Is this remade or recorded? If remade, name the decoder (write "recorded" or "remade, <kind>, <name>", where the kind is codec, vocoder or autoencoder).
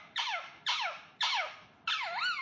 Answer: recorded